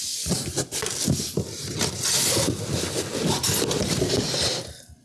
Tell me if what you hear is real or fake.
real